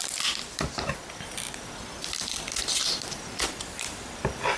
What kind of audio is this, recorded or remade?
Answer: remade